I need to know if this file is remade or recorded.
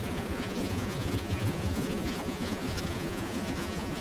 remade